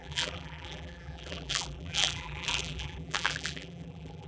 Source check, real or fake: fake